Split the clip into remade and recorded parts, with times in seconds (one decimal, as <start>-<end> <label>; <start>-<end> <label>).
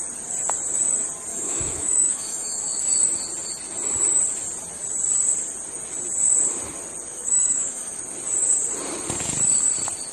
0.0-1.3 recorded; 1.3-2.8 remade; 2.8-7.1 recorded; 7.1-8.0 remade; 8.0-10.1 recorded